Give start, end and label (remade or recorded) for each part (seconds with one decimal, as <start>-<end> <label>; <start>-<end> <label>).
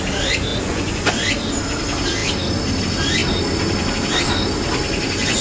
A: 0.0-0.5 recorded; 0.5-1.1 remade; 1.1-5.4 recorded